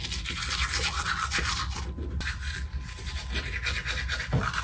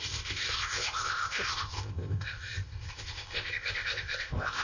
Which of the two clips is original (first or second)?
first